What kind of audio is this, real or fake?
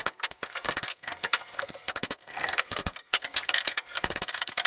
fake